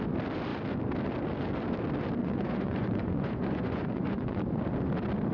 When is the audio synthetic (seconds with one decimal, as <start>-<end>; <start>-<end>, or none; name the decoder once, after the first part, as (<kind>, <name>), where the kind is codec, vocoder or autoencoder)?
2.2-4.4 (vocoder, Vocos)